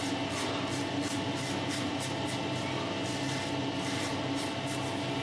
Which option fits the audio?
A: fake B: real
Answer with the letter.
B